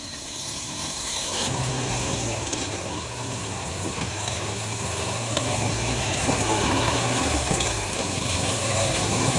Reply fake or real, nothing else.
fake